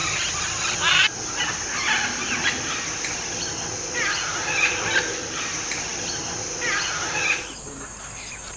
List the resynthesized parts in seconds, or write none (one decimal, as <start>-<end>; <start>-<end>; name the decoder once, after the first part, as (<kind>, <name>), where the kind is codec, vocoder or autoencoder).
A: none

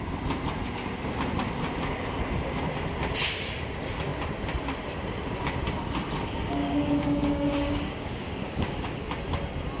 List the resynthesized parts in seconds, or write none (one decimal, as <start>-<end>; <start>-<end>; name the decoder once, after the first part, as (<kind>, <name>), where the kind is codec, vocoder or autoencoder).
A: 6.6-9.1 (codec, DAC)

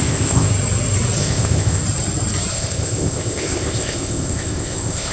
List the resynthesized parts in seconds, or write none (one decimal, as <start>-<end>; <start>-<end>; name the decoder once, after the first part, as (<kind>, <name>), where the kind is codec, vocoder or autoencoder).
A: 0.0-0.5 (codec, ZipCodec); 1.2-1.8; 2.5-5.1